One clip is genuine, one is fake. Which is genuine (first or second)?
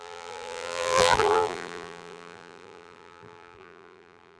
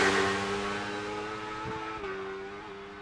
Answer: second